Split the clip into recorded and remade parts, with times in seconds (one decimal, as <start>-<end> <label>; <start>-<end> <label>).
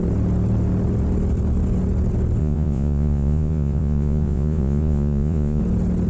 0.0-2.4 recorded; 2.4-5.6 remade; 5.6-6.1 recorded